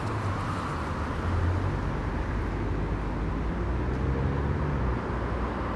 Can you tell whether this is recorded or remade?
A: recorded